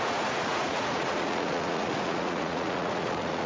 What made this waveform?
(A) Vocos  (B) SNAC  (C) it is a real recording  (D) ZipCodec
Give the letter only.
A